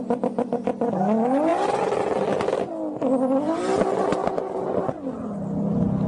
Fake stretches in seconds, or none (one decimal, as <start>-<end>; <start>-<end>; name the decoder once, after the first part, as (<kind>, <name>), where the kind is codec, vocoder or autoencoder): none